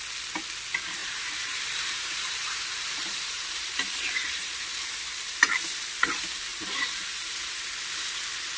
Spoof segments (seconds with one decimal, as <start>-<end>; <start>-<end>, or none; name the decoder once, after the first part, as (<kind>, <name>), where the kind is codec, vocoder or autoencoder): 1.0-5.4 (vocoder, BigVGAN v2); 6.5-7.4